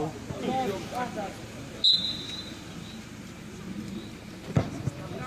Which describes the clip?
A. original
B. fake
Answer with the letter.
A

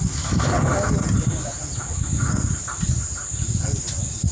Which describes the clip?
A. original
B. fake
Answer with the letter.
A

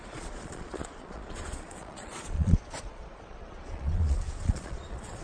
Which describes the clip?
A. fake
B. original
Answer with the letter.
A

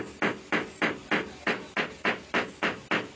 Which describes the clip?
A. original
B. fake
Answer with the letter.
A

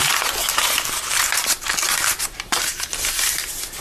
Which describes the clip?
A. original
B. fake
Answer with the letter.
B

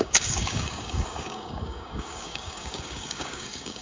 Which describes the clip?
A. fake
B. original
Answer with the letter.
A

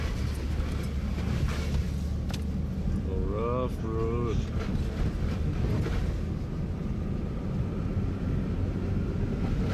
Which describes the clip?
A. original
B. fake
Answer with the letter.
A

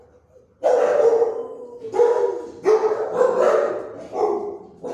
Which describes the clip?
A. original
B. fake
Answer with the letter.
A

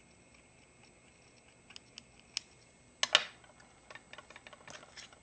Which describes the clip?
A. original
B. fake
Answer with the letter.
A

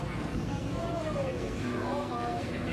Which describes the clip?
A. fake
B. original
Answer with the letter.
A